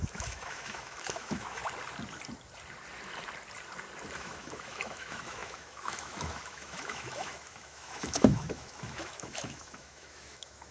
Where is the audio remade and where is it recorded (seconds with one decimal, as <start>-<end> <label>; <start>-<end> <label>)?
0.0-1.6 remade; 1.6-4.2 recorded; 4.2-10.7 remade